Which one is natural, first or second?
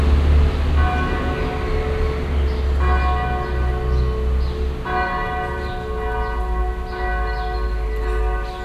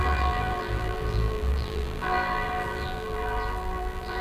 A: first